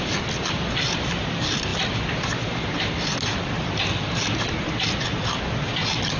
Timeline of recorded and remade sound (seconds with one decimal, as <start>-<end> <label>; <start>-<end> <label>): 0.0-6.2 recorded